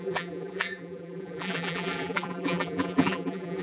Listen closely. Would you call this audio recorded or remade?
remade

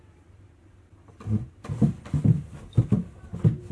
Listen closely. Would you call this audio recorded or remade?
recorded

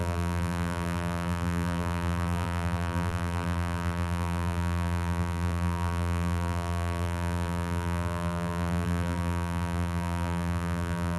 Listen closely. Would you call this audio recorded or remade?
remade